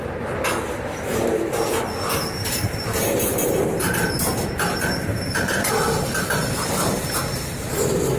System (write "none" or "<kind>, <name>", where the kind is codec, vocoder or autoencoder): vocoder, BigVGAN v2